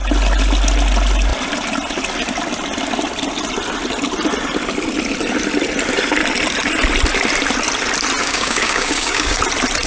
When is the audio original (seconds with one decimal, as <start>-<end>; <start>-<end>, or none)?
0.0-8.2; 9.4-9.9